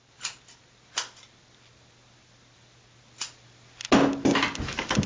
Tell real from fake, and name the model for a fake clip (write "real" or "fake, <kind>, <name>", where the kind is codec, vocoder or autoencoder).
real